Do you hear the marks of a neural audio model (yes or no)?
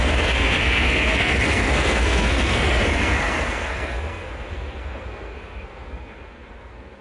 yes